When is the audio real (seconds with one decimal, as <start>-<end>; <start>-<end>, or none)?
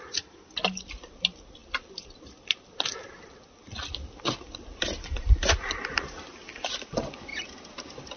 0.0-8.2